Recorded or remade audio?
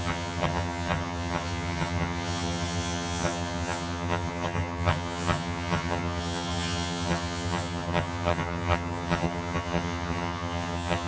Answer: remade